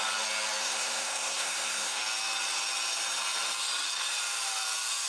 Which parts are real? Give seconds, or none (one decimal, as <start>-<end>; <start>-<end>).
0.0-0.6; 2.0-5.1